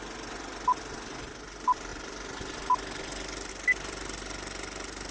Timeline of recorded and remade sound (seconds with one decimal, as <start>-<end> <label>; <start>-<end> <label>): 0.0-5.1 recorded